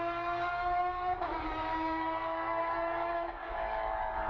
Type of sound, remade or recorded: remade